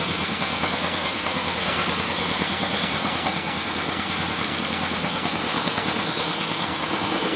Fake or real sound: fake